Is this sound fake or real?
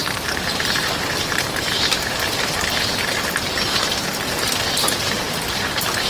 fake